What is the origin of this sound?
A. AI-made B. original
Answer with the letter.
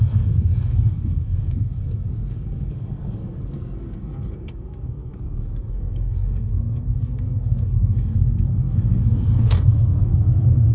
A